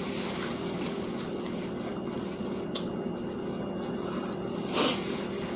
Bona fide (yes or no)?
yes